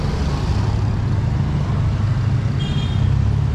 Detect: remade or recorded recorded